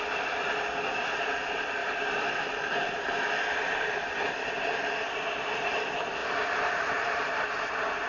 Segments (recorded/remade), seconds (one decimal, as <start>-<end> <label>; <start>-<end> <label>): 0.0-1.8 recorded; 1.8-5.0 remade; 5.0-6.2 recorded; 6.2-8.1 remade